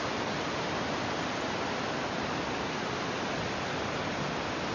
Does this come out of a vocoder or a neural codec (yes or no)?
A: no